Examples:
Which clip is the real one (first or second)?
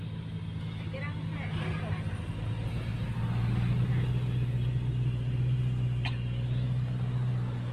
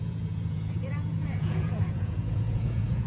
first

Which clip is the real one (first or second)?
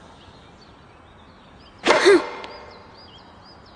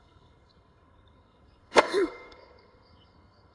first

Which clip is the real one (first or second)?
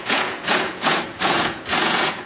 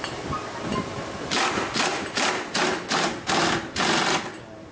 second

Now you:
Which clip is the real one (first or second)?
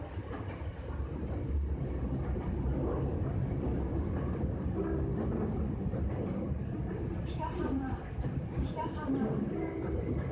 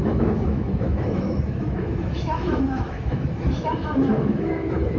first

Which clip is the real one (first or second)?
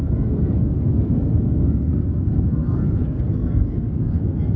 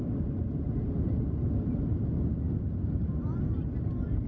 second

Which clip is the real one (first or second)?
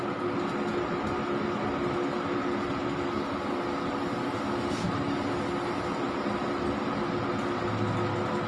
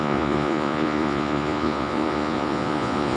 first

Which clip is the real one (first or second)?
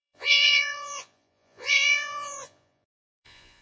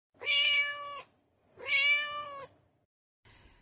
second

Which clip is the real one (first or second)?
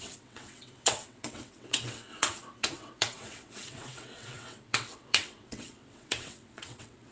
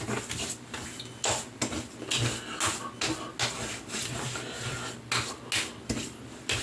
second